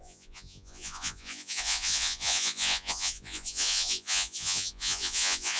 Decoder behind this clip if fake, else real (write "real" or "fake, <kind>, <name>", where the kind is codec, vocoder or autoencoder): fake, vocoder, Vocos